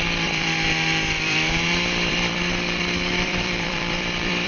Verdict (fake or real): fake